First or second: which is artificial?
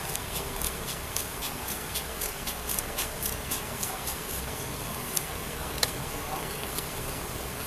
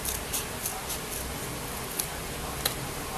first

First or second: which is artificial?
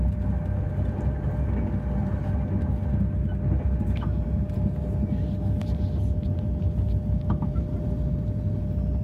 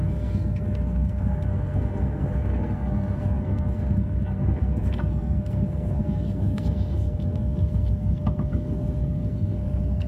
second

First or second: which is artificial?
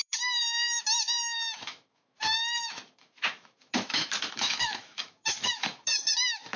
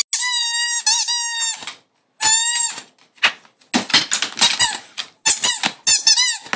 first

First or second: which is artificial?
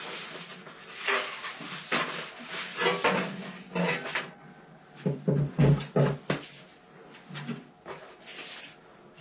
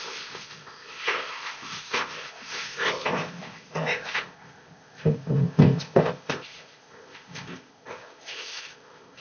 second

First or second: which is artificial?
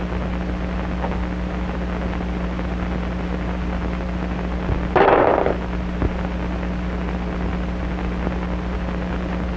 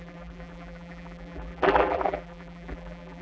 second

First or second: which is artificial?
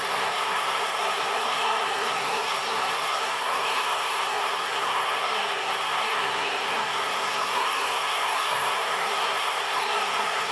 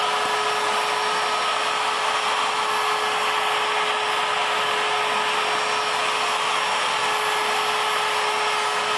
first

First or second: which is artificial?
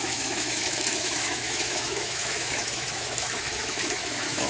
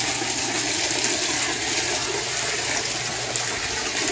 first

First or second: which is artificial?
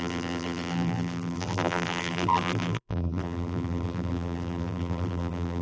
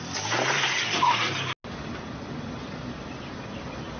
first